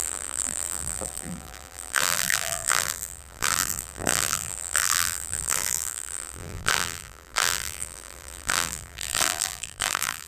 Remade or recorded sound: remade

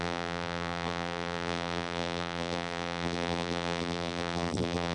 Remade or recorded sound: remade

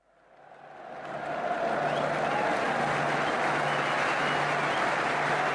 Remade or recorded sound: recorded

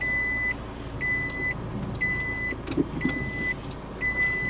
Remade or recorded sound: recorded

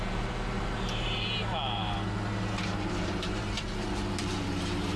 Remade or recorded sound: remade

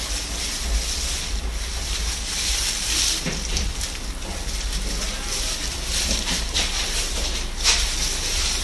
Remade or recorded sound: remade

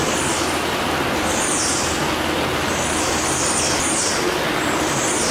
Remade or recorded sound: recorded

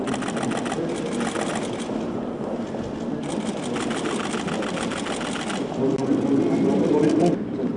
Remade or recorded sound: recorded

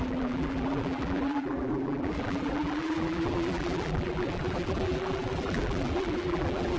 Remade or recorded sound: remade